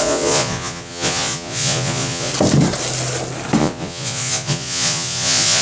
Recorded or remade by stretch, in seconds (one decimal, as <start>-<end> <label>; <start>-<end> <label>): 0.0-2.3 remade; 2.3-3.6 recorded; 3.6-5.6 remade

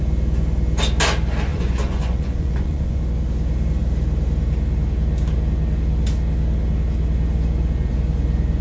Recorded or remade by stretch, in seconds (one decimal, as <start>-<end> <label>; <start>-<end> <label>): 0.0-1.5 recorded; 1.5-3.0 remade; 3.0-8.6 recorded

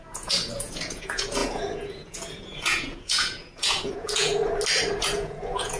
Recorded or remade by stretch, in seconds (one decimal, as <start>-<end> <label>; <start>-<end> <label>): 0.0-4.4 remade; 4.4-5.0 recorded; 5.0-5.8 remade